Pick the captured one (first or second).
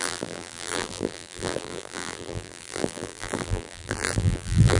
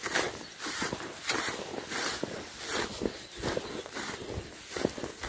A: second